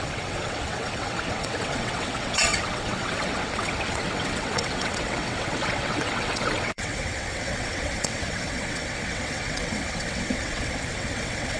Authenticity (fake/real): fake